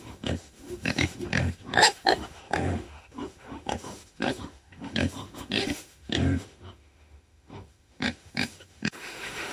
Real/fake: fake